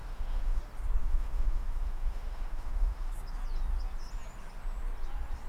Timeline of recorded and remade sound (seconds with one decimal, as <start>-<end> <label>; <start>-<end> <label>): 0.0-0.6 remade; 0.6-1.0 recorded; 1.0-3.1 remade; 3.1-5.5 recorded